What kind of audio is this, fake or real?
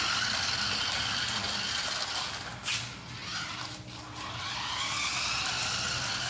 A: real